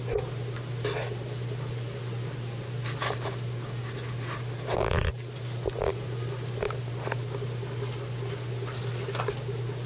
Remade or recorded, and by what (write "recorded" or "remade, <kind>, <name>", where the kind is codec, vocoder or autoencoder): recorded